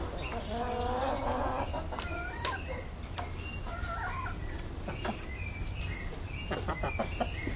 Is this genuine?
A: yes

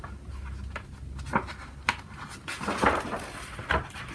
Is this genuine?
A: yes